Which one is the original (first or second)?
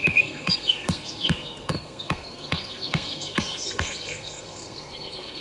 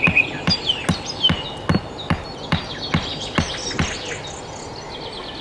second